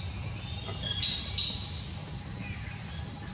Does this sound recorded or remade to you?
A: recorded